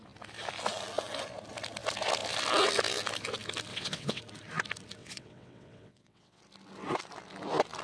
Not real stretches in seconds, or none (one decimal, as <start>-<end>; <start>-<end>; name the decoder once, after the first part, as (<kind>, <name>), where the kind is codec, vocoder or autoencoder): 3.7-4.2 (vocoder, WaveNeXt); 5.0-6.4